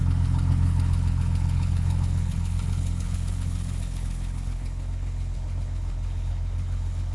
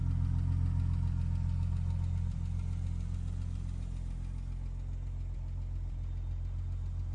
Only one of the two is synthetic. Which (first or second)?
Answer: first